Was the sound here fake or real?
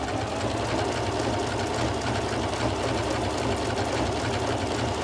real